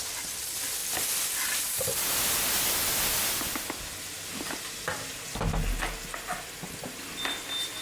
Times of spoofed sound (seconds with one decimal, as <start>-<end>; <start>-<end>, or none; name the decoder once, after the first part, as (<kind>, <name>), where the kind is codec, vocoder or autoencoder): none